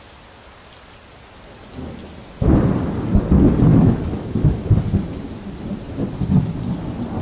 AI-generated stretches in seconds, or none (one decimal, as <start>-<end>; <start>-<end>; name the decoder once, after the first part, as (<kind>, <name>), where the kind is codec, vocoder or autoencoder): 3.7-4.8 (autoencoder, DAC-VAE)